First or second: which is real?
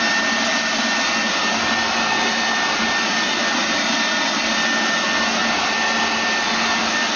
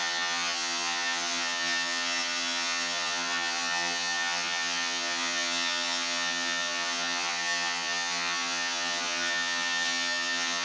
first